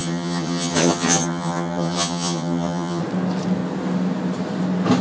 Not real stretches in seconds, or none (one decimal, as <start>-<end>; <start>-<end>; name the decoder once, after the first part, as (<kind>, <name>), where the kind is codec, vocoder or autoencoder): 0.0-3.0 (vocoder, HiFi-GAN)